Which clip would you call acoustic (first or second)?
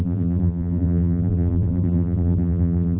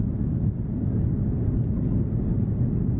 second